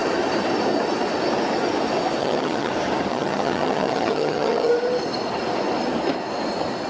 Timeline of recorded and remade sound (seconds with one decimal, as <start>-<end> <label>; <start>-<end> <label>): 0.0-2.2 recorded; 2.2-2.7 remade; 2.7-3.1 recorded; 3.1-4.7 remade; 4.7-6.9 recorded